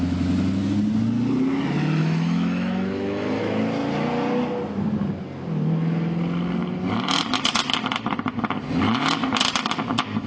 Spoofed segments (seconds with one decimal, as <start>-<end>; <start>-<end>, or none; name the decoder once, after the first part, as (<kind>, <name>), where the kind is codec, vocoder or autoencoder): 2.0-3.4 (autoencoder, DAC-VAE)